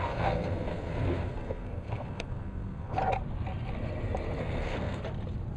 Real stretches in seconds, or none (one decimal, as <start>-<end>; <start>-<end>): 3.0-4.4; 5.0-5.6